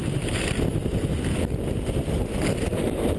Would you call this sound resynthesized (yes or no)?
no